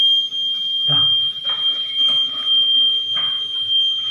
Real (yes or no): yes